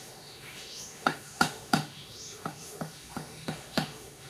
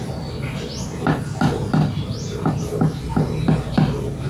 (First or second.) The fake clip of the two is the first